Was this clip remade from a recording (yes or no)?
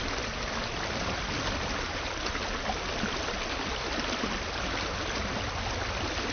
no